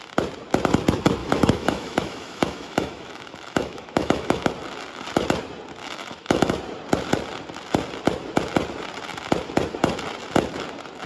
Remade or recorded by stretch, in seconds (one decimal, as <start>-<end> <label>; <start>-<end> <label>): 0.0-1.2 recorded; 1.2-4.5 remade; 4.5-5.8 recorded; 5.8-6.5 remade; 6.5-11.1 recorded